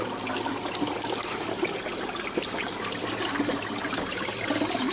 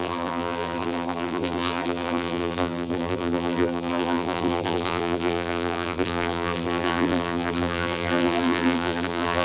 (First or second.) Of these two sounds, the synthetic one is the second